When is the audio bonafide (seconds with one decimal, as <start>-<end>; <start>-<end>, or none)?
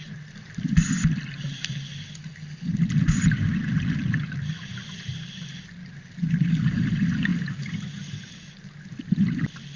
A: 0.0-9.8